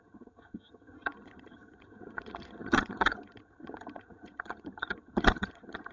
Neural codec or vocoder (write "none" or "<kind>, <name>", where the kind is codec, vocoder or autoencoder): vocoder, HiFi-GAN